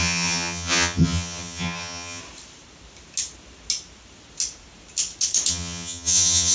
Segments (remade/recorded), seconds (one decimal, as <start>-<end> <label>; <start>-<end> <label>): 0.0-2.2 remade; 2.2-5.5 recorded; 5.5-6.5 remade